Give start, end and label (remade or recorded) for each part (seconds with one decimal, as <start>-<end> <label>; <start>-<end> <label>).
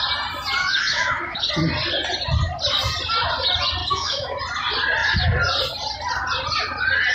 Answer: 0.0-0.6 recorded; 0.6-1.5 remade; 1.5-3.8 recorded; 3.8-4.4 remade; 4.4-7.1 recorded